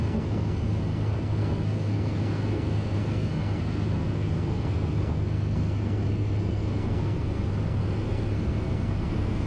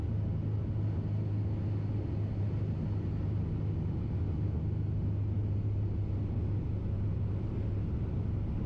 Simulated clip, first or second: first